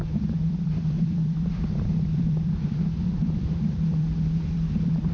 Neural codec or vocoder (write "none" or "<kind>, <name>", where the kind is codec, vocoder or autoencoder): vocoder, BigVGAN v2